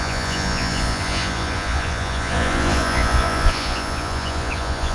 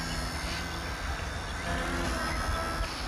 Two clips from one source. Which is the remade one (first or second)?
first